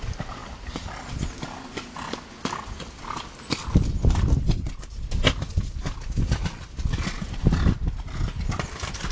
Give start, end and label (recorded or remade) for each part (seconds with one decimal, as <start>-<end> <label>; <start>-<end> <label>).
0.0-9.1 recorded